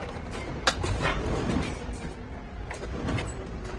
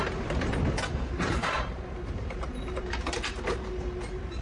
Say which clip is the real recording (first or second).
first